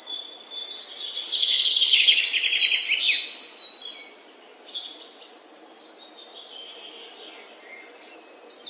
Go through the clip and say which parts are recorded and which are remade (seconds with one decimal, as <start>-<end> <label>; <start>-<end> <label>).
0.0-1.4 recorded; 1.4-2.2 remade; 2.2-8.7 recorded